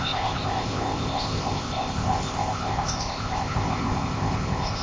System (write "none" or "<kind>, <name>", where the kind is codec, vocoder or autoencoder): codec, ZipCodec